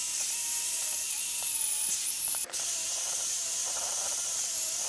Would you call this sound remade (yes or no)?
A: yes